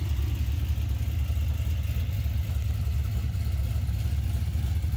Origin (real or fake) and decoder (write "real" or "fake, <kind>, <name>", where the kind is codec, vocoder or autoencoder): real